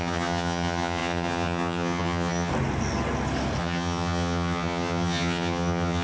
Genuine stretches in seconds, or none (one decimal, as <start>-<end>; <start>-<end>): 2.5-3.6